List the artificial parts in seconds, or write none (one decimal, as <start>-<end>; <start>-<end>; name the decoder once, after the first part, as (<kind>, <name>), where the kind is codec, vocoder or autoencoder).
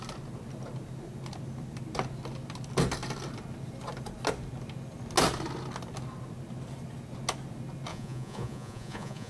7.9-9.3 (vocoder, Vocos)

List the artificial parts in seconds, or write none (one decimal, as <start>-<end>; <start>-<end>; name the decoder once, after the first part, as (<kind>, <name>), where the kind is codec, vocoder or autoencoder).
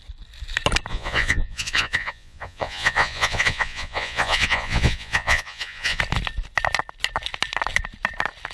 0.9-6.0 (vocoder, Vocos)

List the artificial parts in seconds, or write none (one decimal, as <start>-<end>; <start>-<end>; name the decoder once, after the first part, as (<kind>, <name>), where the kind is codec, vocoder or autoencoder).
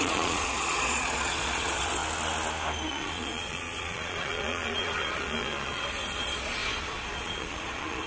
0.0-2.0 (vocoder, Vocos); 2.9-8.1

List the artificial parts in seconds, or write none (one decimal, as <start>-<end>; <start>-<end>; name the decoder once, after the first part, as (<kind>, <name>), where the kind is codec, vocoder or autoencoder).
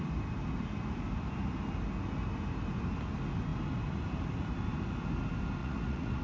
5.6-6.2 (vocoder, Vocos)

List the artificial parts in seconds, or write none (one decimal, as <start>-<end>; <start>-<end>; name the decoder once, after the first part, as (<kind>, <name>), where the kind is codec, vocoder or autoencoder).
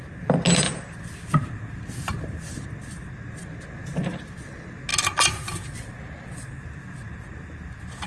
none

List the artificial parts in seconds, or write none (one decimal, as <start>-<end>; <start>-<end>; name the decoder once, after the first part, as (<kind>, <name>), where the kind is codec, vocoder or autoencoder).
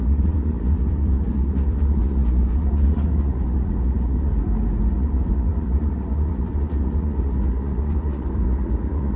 0.0-4.3 (vocoder, Vocos); 4.9-9.2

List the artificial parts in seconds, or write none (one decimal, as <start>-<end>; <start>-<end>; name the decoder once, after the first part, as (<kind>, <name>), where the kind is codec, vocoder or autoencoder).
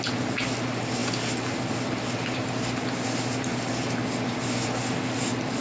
none